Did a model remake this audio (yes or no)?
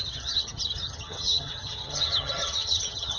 yes